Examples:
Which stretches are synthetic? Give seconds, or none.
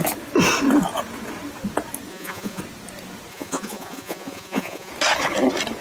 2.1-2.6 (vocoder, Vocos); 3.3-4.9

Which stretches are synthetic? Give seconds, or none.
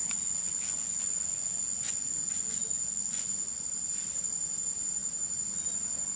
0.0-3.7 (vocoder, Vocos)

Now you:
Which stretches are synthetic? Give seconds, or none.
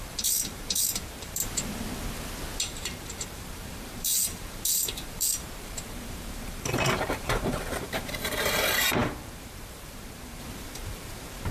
0.0-1.4 (vocoder, BigVGAN v2); 2.6-11.5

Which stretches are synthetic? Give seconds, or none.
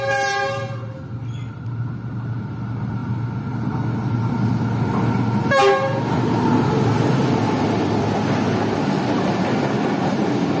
none